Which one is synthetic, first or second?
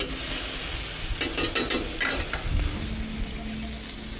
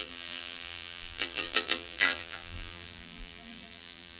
second